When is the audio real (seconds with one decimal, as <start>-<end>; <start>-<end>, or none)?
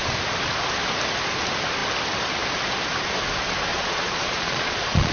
0.0-3.7